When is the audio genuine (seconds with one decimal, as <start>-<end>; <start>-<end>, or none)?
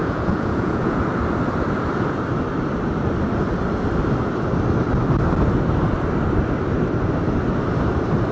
1.0-8.3